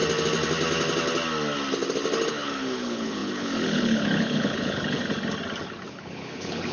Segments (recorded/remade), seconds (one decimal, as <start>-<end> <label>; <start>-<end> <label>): 0.0-2.3 recorded; 2.3-5.0 remade; 5.0-5.9 recorded; 5.9-6.7 remade